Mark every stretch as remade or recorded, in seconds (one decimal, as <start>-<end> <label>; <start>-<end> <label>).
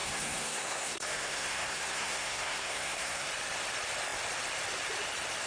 0.0-3.3 remade; 3.3-5.5 recorded